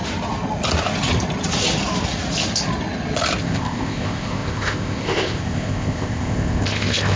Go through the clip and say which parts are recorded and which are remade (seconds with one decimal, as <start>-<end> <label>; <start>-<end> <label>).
0.0-3.4 recorded; 3.4-7.2 remade